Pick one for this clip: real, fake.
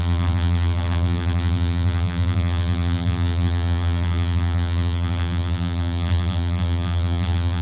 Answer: fake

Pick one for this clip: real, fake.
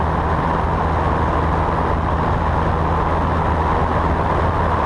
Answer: real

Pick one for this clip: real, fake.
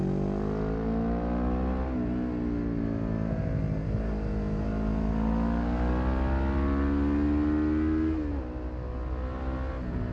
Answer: real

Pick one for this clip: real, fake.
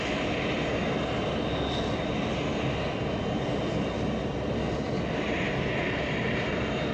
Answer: real